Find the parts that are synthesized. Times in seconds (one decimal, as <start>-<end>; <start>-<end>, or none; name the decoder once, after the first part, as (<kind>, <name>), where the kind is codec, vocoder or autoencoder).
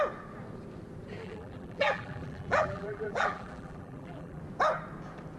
1.2-4.4 (vocoder, BigVGAN v2)